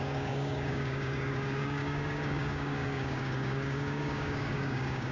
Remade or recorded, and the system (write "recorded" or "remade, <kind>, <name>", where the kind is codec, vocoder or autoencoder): remade, codec, DAC